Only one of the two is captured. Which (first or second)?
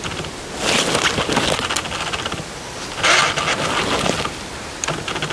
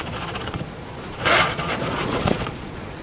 first